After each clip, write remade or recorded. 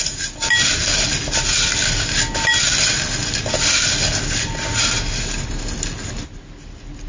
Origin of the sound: recorded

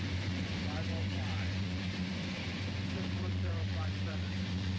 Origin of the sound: remade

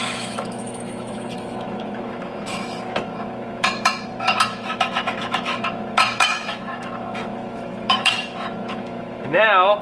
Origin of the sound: remade